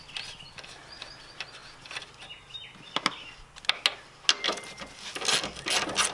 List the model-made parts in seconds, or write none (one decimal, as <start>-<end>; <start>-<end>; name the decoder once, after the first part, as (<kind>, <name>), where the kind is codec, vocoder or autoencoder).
none